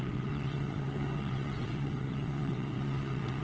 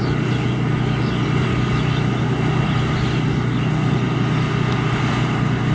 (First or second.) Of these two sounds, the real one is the second